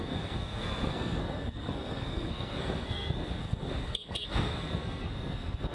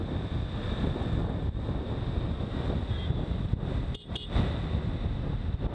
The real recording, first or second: second